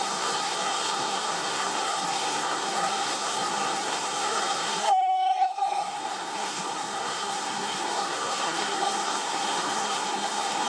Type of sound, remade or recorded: remade